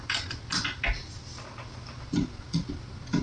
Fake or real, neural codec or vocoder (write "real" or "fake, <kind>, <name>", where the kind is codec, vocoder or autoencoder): real